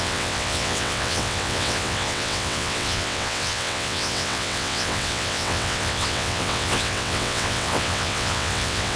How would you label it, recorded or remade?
remade